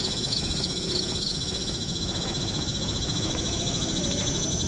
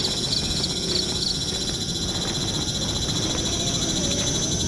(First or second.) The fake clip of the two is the first